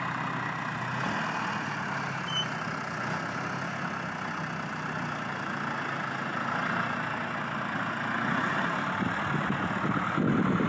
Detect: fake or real real